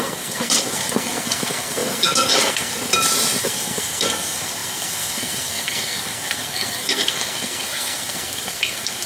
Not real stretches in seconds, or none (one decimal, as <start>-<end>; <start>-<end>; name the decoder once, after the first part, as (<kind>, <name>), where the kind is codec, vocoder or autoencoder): 0.0-2.7 (codec, SNAC); 3.4-9.1